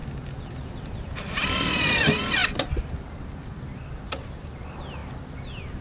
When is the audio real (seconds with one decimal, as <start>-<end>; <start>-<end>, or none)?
none